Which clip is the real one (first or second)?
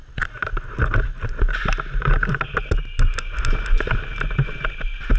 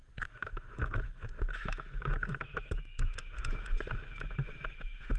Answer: first